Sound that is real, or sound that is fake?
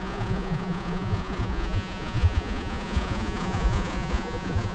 fake